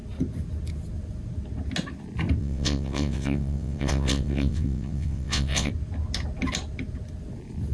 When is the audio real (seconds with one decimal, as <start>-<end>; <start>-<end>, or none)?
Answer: 0.0-2.4; 5.7-7.7